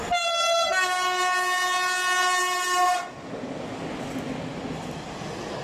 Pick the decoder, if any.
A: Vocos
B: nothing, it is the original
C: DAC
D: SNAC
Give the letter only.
B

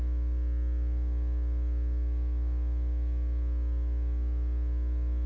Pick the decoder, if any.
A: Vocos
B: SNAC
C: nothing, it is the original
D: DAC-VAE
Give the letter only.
C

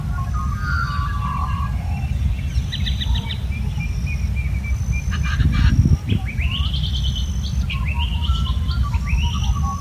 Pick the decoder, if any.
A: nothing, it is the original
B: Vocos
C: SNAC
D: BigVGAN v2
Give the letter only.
A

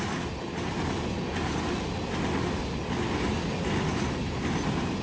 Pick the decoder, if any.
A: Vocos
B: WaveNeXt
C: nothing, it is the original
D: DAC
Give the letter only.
C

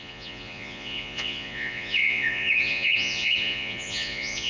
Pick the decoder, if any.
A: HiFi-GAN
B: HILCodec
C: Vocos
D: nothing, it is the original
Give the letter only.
C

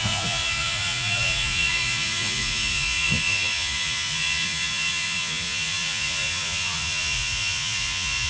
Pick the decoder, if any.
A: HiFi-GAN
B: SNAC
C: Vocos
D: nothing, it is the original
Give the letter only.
C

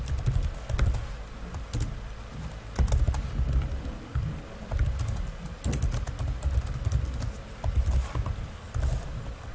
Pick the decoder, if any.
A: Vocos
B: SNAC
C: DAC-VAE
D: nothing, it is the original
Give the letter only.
D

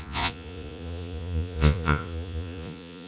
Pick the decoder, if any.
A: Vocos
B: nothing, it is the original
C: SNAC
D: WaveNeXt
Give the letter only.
A